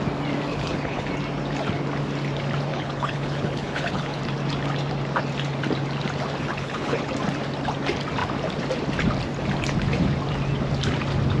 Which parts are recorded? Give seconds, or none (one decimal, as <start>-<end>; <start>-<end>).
0.0-0.5; 1.1-2.7; 4.2-6.5; 7.1-11.4